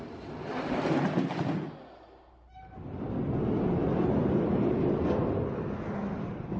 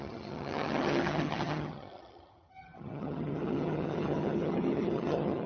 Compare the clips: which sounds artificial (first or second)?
second